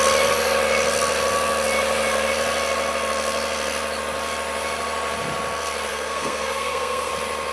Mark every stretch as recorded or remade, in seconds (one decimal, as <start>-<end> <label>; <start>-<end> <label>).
0.0-5.9 recorded; 5.9-7.1 remade; 7.1-7.5 recorded